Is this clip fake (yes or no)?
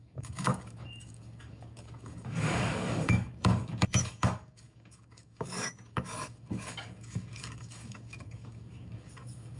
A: yes